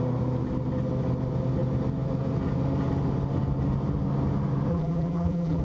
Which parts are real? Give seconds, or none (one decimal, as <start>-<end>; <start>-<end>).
0.0-4.7